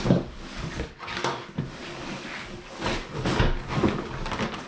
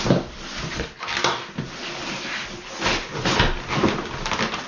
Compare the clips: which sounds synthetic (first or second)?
first